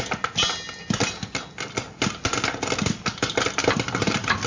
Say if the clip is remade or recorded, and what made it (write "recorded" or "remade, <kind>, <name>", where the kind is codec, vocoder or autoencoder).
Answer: recorded